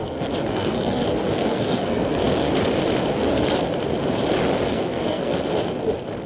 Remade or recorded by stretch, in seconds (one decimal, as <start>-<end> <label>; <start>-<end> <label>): 0.0-2.5 remade; 2.5-3.1 recorded; 3.1-3.6 remade; 3.6-4.7 recorded; 4.7-5.4 remade; 5.4-6.3 recorded